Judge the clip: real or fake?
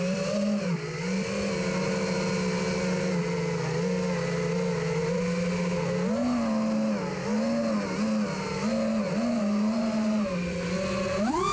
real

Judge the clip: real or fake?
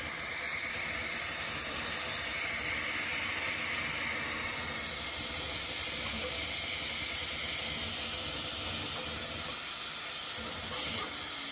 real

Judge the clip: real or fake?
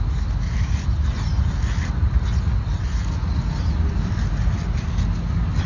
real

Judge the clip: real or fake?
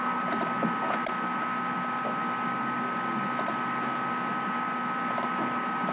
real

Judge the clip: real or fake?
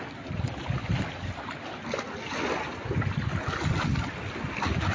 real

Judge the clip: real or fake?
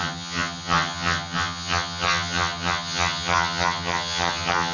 fake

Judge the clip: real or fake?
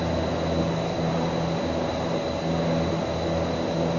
real